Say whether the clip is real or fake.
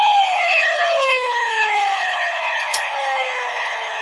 fake